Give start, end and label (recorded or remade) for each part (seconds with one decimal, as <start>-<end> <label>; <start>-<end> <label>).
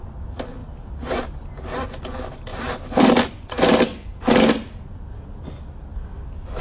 0.0-0.6 recorded; 0.6-1.2 remade; 1.2-2.5 recorded; 2.5-3.1 remade; 3.1-6.6 recorded